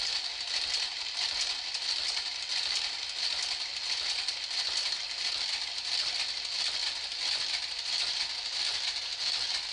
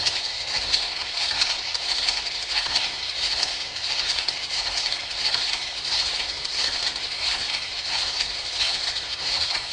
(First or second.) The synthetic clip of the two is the second